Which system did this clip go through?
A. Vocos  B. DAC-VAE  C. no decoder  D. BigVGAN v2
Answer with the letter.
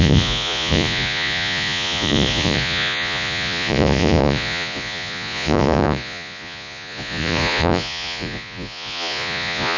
A